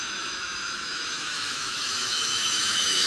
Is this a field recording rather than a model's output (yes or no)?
no